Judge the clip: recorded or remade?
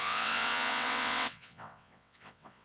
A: remade